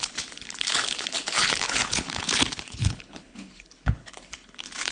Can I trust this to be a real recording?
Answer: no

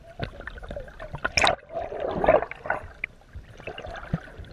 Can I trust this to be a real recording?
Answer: yes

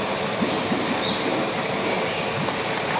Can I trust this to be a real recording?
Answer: yes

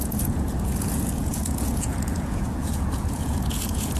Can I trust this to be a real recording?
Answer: no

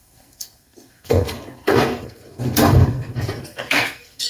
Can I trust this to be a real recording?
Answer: no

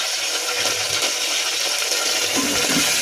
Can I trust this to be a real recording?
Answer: yes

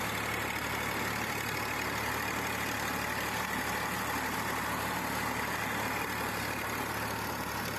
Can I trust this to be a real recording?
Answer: yes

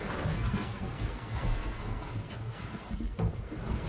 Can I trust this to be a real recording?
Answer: no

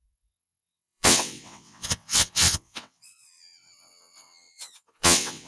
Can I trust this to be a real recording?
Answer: no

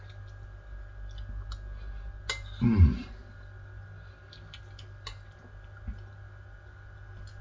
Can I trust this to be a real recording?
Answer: yes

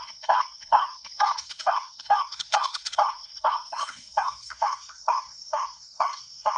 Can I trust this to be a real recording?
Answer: no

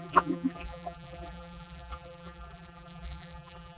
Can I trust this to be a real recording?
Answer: no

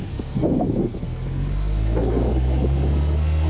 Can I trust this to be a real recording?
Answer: no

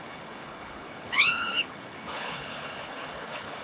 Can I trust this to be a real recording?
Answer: no